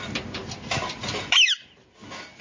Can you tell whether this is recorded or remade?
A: recorded